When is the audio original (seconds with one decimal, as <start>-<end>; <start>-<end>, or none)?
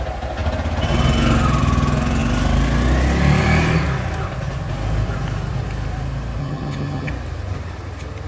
0.0-6.4; 7.1-8.3